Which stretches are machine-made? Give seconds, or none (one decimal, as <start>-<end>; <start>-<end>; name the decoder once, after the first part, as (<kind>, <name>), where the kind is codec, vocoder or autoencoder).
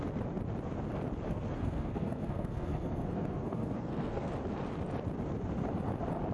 1.3-4.3 (codec, SNAC)